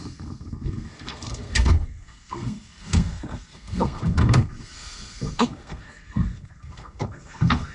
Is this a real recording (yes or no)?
no